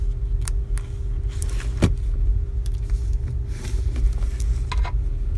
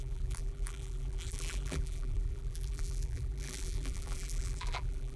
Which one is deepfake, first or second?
second